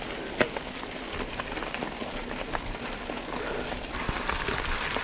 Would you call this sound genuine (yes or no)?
yes